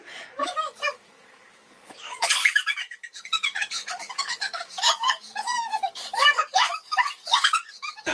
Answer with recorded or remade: remade